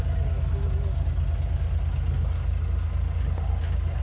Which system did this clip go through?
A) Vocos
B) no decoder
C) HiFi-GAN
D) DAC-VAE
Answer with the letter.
B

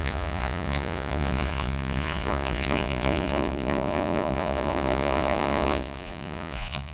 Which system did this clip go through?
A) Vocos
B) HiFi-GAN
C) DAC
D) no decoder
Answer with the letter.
A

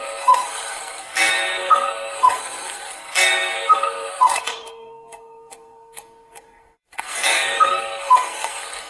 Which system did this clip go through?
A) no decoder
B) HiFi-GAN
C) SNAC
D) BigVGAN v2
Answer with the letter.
C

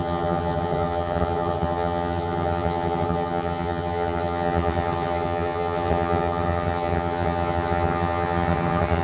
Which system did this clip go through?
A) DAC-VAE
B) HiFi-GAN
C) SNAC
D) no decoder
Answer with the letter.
B